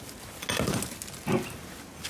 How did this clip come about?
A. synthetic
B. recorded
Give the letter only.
B